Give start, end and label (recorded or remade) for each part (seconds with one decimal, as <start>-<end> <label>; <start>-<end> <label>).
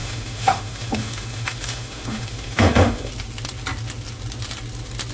0.0-3.1 remade; 3.1-5.1 recorded